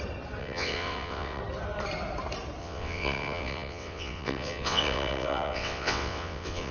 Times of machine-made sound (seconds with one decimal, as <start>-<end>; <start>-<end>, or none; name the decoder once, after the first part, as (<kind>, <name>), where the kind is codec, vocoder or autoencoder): 0.4-1.4 (vocoder, WaveNeXt); 2.6-6.7